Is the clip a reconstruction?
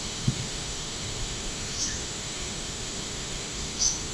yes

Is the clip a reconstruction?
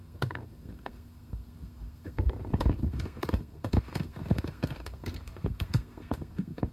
yes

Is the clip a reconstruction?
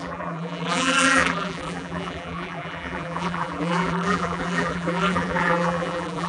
yes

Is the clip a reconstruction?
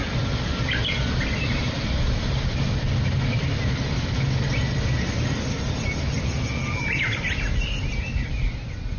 no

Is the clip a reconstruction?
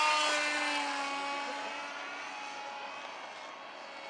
no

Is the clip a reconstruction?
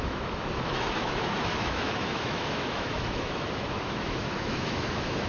yes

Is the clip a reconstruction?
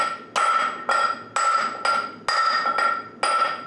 no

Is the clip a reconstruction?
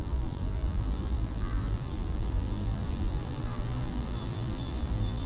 yes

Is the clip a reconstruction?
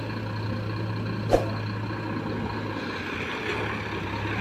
no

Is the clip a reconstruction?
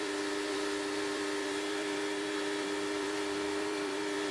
yes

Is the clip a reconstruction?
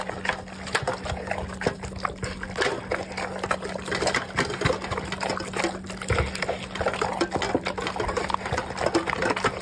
no